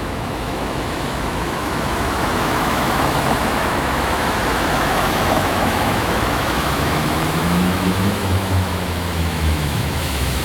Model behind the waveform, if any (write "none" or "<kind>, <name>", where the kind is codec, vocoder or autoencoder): autoencoder, DAC-VAE